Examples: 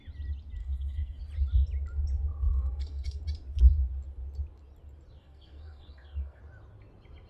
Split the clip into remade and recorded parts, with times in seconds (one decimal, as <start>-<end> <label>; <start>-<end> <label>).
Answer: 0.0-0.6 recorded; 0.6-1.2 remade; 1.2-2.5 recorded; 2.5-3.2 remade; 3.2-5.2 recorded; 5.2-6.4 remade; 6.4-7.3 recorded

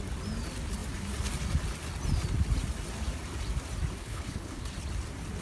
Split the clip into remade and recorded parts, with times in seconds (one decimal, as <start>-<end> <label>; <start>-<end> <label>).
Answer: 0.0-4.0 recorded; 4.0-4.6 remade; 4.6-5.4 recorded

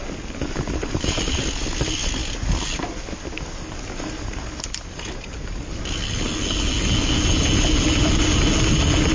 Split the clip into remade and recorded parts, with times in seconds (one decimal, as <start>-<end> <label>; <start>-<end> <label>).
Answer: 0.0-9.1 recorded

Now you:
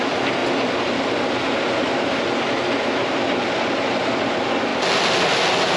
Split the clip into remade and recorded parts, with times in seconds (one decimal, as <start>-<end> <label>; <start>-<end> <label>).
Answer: 0.0-5.8 recorded

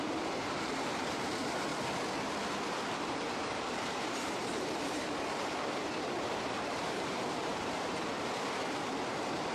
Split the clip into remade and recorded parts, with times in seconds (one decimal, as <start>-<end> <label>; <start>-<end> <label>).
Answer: 0.0-1.7 remade; 1.7-2.9 recorded; 2.9-9.5 remade

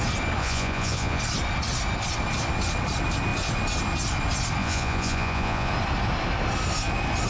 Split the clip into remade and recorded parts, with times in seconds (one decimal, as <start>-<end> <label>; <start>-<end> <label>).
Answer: 0.0-0.4 recorded; 0.4-1.2 remade; 1.2-4.6 recorded; 4.6-5.7 remade; 5.7-7.3 recorded

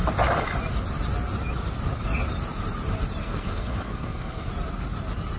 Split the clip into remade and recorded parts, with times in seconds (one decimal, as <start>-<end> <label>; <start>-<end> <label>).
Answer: 0.0-3.2 recorded; 3.2-4.5 remade; 4.5-5.4 recorded